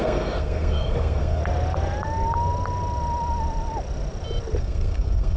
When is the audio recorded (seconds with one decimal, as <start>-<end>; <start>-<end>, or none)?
1.4-4.6